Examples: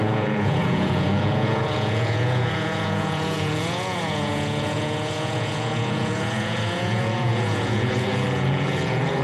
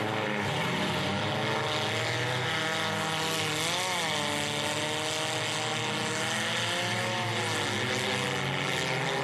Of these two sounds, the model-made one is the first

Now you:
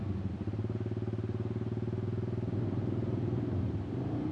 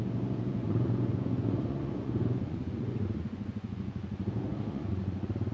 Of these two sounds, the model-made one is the second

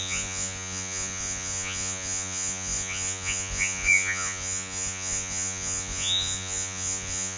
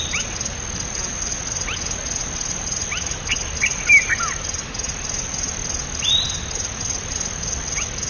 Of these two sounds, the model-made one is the first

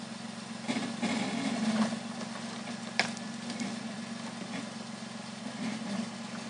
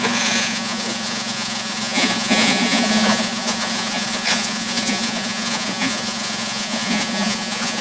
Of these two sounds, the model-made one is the second